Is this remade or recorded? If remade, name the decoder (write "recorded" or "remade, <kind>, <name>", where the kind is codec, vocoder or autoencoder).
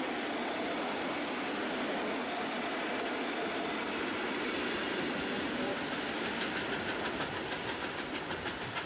remade, vocoder, BigVGAN v2